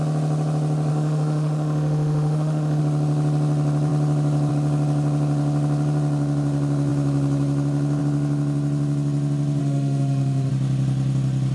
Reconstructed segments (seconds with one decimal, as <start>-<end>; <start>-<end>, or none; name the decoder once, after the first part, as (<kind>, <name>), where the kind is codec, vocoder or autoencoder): 0.9-2.8 (autoencoder, DAC-VAE); 9.6-10.5